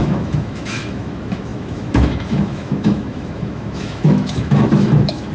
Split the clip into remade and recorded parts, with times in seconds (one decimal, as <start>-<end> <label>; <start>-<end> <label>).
0.0-5.3 remade